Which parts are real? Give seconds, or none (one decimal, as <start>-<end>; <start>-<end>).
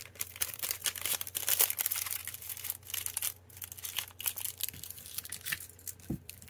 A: 0.8-1.8; 2.2-6.1